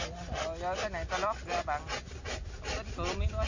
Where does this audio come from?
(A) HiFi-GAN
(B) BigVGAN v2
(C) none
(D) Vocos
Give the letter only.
C